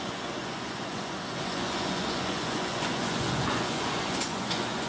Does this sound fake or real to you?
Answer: fake